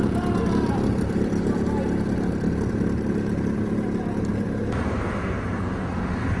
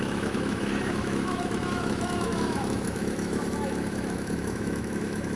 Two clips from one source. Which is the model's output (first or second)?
second